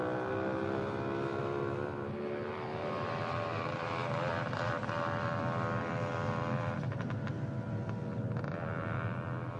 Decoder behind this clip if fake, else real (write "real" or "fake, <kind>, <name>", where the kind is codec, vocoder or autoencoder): real